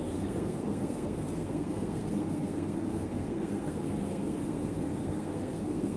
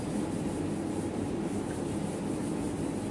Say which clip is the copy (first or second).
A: first